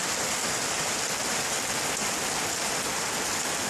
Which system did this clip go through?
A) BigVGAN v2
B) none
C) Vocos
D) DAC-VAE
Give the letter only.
B